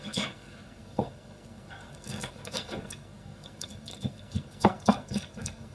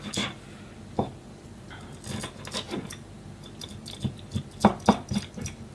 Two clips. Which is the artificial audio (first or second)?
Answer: first